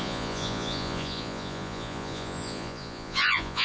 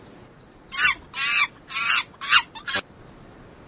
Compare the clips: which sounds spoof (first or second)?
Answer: first